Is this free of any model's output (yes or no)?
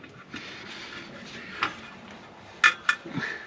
yes